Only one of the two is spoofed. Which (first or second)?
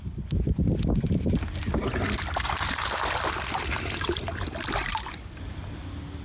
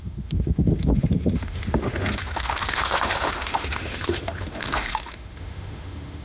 second